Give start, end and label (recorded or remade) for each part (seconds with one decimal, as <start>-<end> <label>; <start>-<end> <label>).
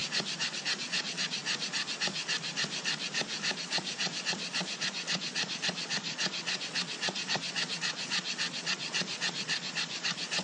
0.0-0.8 recorded; 0.8-1.4 remade; 1.4-3.6 recorded; 3.6-10.4 remade